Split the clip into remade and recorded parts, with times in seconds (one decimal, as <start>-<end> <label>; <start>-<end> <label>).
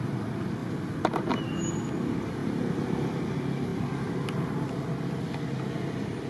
0.0-6.3 recorded